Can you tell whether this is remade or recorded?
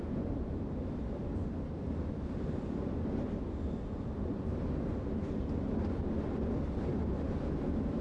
recorded